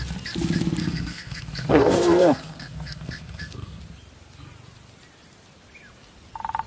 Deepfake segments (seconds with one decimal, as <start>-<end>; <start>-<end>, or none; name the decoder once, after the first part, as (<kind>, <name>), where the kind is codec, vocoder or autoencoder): 0.8-3.8 (codec, SNAC)